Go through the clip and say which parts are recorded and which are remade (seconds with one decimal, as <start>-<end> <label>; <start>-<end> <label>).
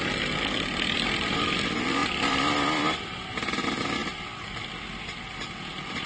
0.0-2.0 recorded; 2.0-3.4 remade; 3.4-6.1 recorded